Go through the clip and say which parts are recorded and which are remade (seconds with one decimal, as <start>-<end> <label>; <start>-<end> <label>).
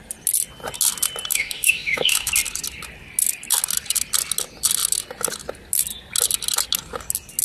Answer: 0.0-1.3 recorded; 1.3-2.3 remade; 2.3-7.4 recorded